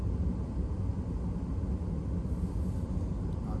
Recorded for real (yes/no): yes